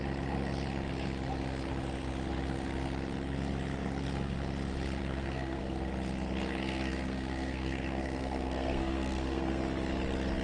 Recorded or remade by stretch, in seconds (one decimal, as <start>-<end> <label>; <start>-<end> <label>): 0.0-5.0 recorded; 5.0-5.6 remade; 5.6-6.6 recorded; 6.6-9.6 remade; 9.6-10.4 recorded